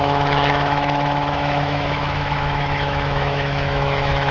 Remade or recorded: remade